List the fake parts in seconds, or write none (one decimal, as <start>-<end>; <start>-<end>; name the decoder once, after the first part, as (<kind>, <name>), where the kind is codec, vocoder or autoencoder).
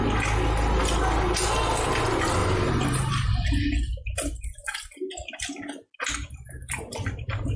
2.4-3.1 (vocoder, BigVGAN v2)